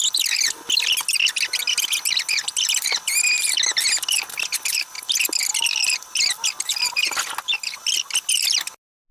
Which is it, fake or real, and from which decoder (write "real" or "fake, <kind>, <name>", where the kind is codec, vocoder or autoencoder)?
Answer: real